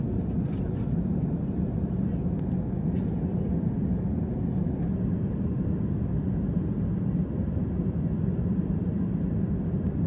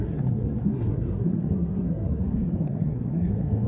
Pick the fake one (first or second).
second